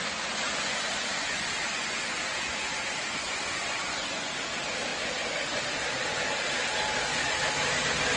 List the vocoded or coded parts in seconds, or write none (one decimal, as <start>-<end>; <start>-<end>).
0.0-4.3; 4.9-5.6